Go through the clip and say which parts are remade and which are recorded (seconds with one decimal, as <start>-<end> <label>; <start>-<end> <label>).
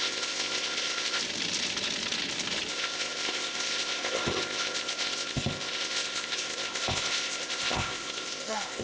0.0-1.2 remade; 1.2-2.7 recorded; 2.7-8.8 remade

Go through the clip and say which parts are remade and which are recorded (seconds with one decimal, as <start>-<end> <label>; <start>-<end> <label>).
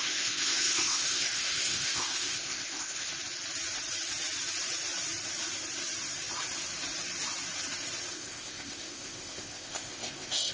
0.0-3.1 remade; 3.1-8.1 recorded; 8.1-10.5 remade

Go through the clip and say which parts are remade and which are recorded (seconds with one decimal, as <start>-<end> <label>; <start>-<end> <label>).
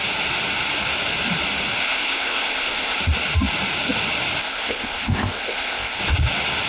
0.0-1.8 recorded; 1.8-3.0 remade; 3.0-4.4 recorded; 4.4-6.0 remade; 6.0-6.7 recorded